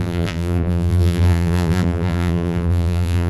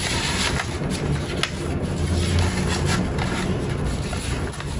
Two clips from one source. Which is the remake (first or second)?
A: first